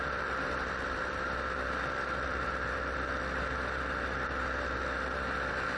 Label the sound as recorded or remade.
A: recorded